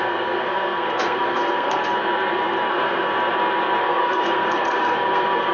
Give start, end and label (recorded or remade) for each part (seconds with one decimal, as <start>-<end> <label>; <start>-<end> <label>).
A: 0.0-1.8 remade; 1.8-2.7 recorded; 2.7-3.1 remade; 3.1-3.8 recorded; 3.8-5.5 remade